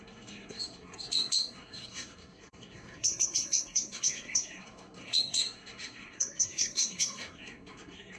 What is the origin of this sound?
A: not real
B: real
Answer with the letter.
A